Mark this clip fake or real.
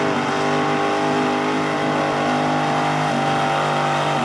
real